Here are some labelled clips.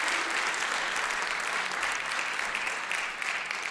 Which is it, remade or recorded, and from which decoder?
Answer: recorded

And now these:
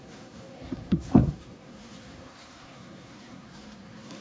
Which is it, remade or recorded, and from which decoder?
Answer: remade, codec, SNAC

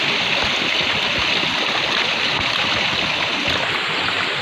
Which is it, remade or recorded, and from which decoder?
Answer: recorded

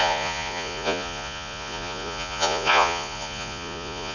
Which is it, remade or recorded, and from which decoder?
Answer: remade, vocoder, Vocos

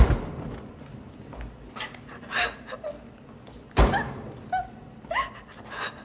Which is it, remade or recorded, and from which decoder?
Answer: recorded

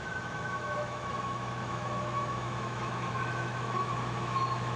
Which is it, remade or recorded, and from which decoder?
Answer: remade, autoencoder, DAC-VAE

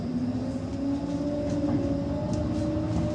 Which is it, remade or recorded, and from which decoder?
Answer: recorded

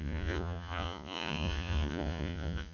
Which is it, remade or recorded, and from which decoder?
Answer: remade, vocoder, Vocos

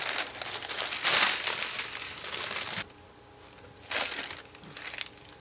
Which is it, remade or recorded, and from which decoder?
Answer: recorded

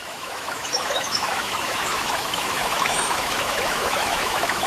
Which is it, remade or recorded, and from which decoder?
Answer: remade, autoencoder, DAC-VAE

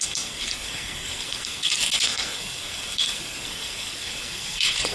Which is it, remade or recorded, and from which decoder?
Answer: remade, codec, SNAC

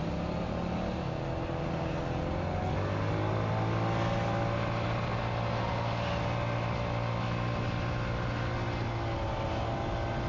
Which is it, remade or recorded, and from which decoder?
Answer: recorded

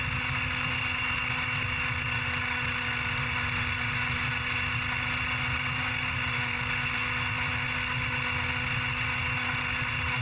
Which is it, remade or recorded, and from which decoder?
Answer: recorded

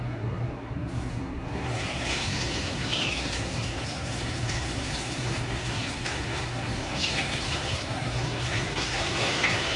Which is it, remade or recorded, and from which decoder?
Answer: remade, codec, SNAC